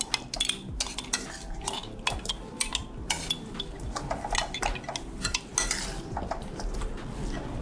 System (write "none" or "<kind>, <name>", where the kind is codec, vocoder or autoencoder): none